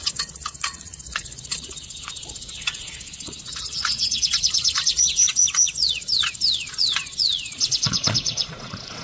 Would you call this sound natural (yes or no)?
no